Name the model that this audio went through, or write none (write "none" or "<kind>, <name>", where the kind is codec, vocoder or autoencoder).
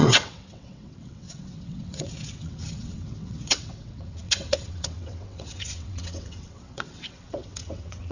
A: vocoder, WaveNeXt